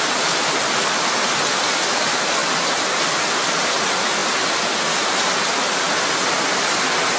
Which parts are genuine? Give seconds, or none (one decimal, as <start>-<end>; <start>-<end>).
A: 0.0-7.2